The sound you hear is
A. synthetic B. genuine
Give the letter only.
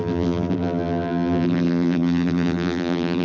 A